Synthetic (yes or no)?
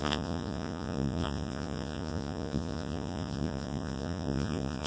yes